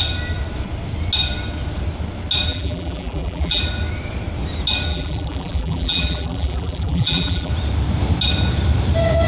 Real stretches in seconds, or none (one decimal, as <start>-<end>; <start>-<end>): 0.0-2.5; 3.6-4.9; 7.5-9.3